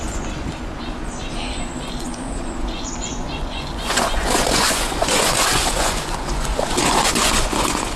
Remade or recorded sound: remade